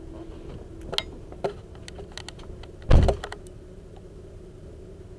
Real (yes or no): yes